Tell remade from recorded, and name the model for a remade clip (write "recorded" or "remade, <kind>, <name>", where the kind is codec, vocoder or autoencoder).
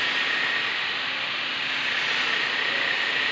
recorded